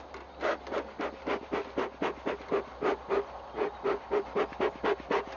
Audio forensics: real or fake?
real